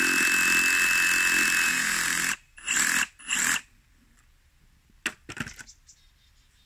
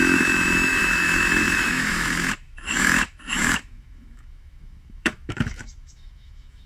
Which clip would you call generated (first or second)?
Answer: second